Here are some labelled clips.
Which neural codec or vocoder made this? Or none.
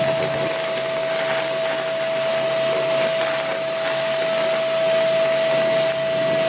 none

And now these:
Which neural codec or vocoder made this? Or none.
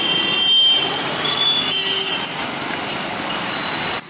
none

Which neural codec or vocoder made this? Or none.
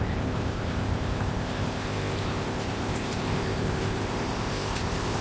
codec, ZipCodec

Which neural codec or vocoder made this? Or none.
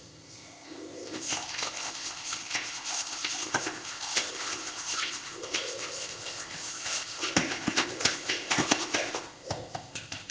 codec, ZipCodec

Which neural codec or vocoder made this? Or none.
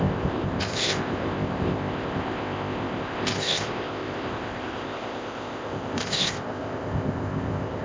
codec, ZipCodec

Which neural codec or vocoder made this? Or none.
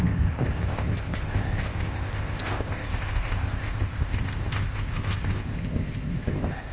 codec, ZipCodec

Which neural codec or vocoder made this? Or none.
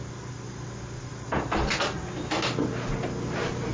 none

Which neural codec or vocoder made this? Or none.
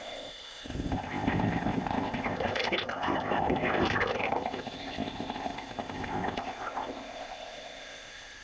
codec, ZipCodec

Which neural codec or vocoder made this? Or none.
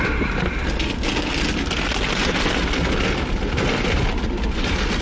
none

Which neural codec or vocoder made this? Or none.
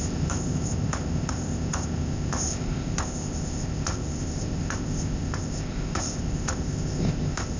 codec, ZipCodec